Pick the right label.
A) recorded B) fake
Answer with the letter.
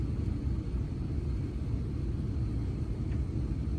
A